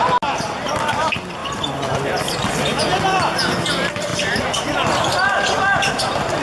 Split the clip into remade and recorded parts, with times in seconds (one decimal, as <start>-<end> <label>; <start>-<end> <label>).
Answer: 0.0-1.4 recorded; 1.4-2.2 remade; 2.2-2.7 recorded; 2.7-3.4 remade; 3.4-4.1 recorded; 4.1-5.0 remade; 5.0-6.4 recorded